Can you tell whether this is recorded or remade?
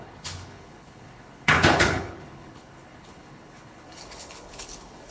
remade